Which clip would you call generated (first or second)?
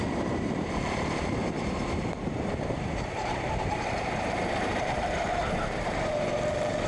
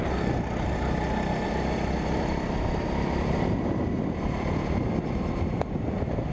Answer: first